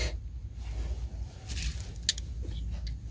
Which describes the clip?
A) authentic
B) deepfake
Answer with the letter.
A